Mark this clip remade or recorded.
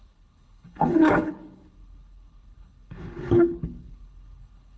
remade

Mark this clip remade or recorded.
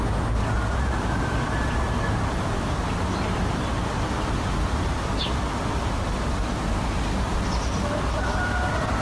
recorded